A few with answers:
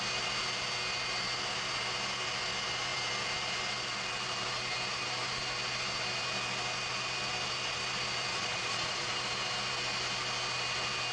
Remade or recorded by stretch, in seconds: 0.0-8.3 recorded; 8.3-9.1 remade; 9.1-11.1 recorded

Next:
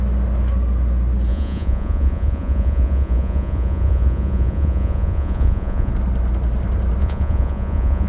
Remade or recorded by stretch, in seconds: 0.0-1.3 recorded; 1.3-5.9 remade; 5.9-7.0 recorded; 7.0-8.1 remade

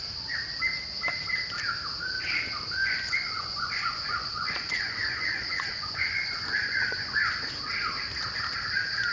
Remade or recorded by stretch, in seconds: 0.0-2.8 recorded; 2.8-7.5 remade; 7.5-9.1 recorded

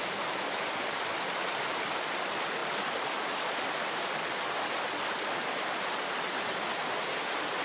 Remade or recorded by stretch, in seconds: 0.0-7.6 recorded

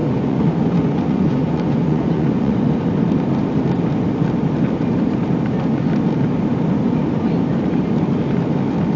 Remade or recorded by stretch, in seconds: 0.0-2.7 remade; 2.7-9.0 recorded

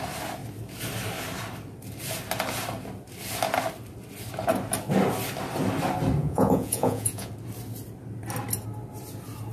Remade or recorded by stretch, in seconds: 0.0-6.2 recorded; 6.2-7.3 remade; 7.3-9.5 recorded

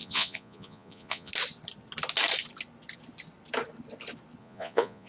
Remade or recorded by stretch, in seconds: 0.0-1.3 remade; 1.3-4.4 recorded; 4.4-5.1 remade

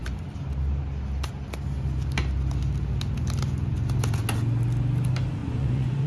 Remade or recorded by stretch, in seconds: 0.0-5.4 recorded; 5.4-6.1 remade